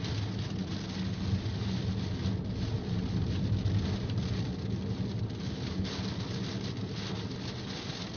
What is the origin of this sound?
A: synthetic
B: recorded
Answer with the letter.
B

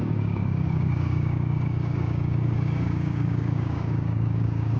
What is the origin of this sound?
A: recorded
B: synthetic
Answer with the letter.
B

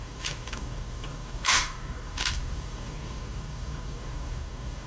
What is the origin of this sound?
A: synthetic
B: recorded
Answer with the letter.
A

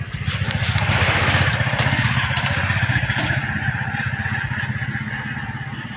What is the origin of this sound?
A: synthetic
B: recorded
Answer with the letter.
B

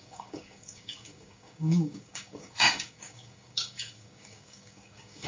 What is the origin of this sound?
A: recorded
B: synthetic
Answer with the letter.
B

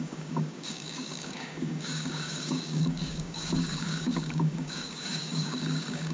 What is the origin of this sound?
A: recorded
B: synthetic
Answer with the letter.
B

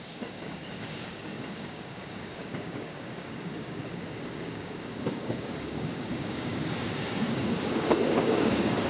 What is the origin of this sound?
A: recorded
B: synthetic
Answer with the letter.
B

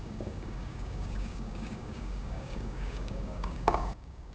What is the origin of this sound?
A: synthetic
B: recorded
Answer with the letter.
A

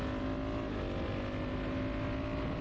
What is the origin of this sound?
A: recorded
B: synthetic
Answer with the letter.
A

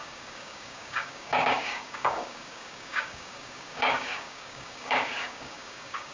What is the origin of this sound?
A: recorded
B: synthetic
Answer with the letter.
B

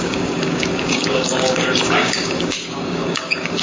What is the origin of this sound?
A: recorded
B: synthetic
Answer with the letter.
B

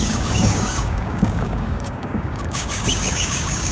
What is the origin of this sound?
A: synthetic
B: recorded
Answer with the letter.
A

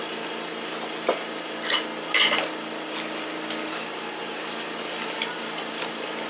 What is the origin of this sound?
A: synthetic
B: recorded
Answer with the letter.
B